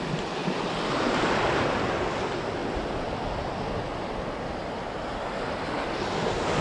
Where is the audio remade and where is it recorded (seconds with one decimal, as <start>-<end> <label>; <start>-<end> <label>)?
0.0-6.6 recorded

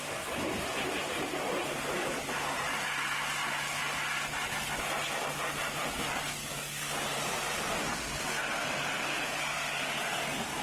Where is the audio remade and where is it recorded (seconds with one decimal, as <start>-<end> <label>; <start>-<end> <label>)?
0.0-10.6 recorded